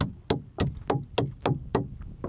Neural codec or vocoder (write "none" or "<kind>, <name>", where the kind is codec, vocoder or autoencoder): none